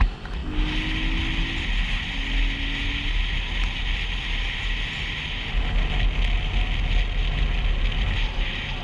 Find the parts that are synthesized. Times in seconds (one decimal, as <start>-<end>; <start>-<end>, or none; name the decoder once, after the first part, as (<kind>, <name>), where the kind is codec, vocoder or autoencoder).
none